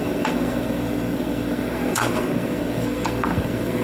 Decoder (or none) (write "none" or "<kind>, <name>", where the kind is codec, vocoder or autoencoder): codec, SNAC